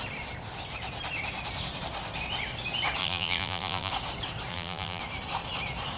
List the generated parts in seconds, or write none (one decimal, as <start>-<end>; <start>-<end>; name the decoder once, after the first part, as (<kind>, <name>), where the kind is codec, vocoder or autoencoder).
3.0-3.9 (vocoder, BigVGAN v2); 4.5-5.0